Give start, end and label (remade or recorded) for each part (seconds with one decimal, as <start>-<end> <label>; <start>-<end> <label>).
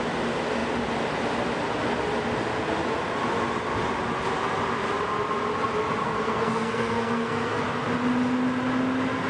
0.0-6.0 recorded; 6.0-7.6 remade; 7.6-9.3 recorded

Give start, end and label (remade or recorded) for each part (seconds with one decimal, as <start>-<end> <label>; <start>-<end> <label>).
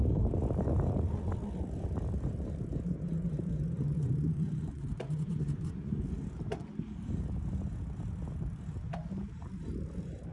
0.0-3.9 recorded; 3.9-6.0 remade; 6.0-10.3 recorded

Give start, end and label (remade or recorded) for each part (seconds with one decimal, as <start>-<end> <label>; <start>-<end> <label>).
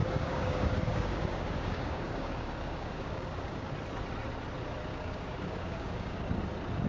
0.0-3.7 remade; 3.7-4.9 recorded; 4.9-6.2 remade; 6.2-6.9 recorded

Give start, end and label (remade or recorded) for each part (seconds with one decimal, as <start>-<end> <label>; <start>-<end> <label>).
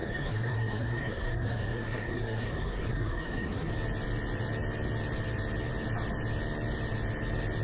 0.0-3.7 remade; 3.7-7.6 recorded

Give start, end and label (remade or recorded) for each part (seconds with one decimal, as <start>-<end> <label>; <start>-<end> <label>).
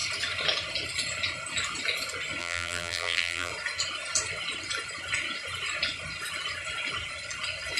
0.0-2.4 recorded; 2.4-3.5 remade; 3.5-7.8 recorded